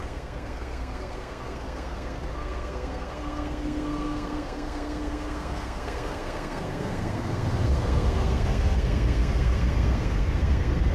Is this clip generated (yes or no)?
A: yes